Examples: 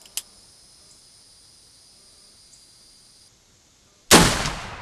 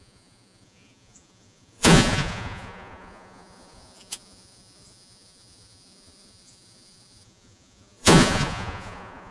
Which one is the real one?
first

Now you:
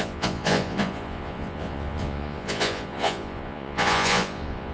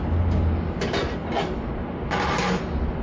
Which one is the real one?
second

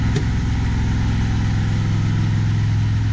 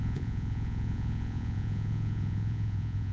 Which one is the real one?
first